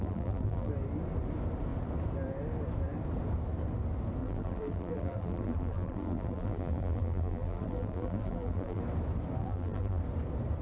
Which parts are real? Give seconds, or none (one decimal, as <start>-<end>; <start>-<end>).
0.7-4.2; 8.8-9.4; 10.0-10.6